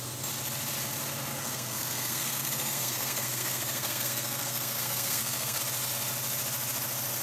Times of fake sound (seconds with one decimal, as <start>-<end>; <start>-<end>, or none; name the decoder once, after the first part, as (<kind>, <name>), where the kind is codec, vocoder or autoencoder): 1.3-5.6 (codec, SNAC)

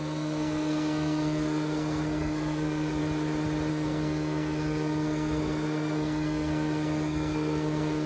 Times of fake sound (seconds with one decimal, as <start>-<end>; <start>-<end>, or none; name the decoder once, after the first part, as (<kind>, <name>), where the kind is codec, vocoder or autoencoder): 0.0-3.0 (codec, SNAC); 3.7-8.1

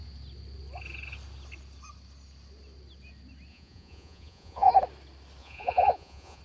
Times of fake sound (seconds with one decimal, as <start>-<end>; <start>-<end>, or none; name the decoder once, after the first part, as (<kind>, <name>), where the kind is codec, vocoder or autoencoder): 3.5-4.7 (vocoder, Vocos); 5.4-6.4

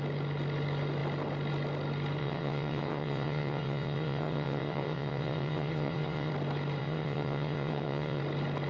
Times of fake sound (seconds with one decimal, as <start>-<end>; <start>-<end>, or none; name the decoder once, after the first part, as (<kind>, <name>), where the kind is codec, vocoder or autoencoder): 2.2-6.3 (vocoder, WaveNeXt); 6.8-8.2

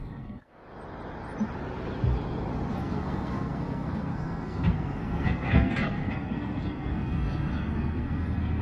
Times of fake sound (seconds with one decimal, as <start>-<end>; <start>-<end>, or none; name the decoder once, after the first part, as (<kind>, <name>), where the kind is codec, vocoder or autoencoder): 0.0-0.6 (codec, SNAC); 2.7-8.6

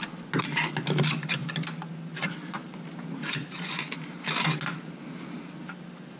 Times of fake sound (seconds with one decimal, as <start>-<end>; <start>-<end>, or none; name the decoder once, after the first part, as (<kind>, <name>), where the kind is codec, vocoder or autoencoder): none

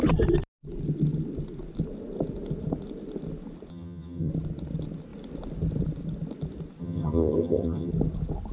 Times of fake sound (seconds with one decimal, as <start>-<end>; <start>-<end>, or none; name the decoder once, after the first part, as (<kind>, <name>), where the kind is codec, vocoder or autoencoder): 3.7-4.3 (vocoder, HiFi-GAN); 6.8-7.9